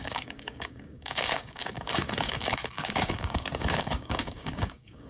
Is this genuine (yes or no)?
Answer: no